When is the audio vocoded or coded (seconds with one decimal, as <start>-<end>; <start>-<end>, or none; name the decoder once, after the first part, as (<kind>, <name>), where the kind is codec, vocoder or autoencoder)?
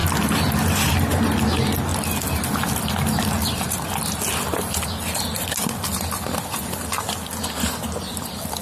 none